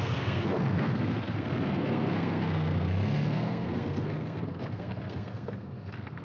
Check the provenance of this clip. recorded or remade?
remade